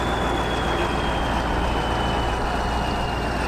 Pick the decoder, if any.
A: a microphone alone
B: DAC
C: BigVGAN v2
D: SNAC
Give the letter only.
A